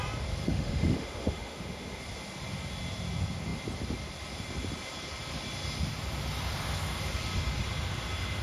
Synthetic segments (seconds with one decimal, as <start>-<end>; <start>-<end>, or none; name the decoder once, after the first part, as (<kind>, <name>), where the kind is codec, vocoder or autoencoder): 0.4-2.0 (autoencoder, DAC-VAE)